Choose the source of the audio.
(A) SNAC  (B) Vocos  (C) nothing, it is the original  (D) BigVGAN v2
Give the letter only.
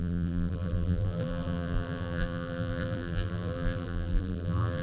D